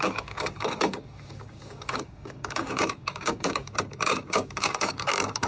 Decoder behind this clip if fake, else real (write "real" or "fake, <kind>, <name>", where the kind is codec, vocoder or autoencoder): fake, codec, DAC